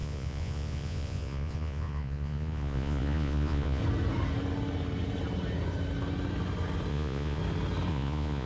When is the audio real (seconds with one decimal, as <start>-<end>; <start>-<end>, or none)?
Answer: 3.8-6.9; 7.4-7.9